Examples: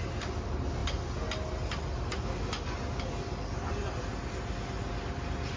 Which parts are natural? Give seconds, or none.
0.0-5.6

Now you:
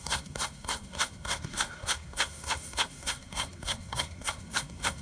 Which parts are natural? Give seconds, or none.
none

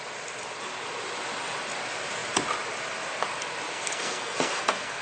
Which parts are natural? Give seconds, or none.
0.0-3.7

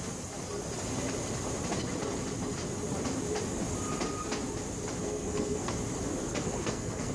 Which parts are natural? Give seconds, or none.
0.0-5.0; 5.7-6.2

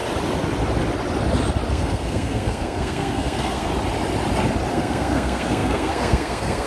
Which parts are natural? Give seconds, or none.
0.0-1.7; 3.7-4.7

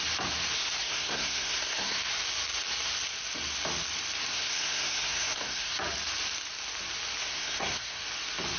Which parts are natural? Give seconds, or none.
0.0-0.8; 2.1-4.3; 5.8-7.2; 8.0-8.6